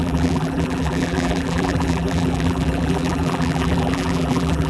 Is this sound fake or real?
fake